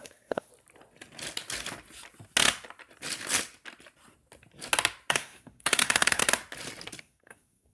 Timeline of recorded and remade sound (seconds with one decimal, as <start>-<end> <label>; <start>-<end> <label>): 0.0-0.5 remade; 0.5-5.1 recorded; 5.1-6.2 remade; 6.2-7.0 recorded; 7.0-7.7 remade